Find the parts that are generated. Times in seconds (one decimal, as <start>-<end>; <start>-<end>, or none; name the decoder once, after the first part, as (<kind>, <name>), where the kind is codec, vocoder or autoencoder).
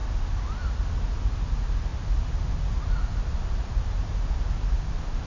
none